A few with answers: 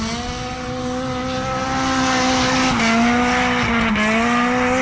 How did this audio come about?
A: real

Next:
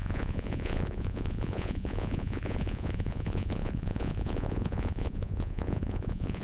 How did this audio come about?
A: fake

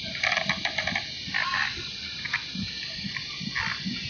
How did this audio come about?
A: real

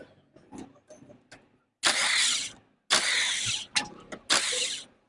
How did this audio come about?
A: real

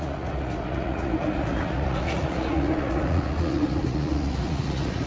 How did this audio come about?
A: fake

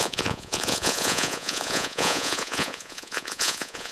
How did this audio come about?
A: fake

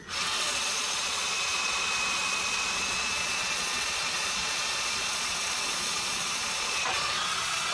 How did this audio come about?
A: fake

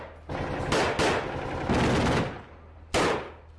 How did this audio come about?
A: real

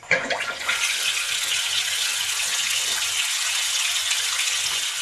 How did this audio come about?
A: fake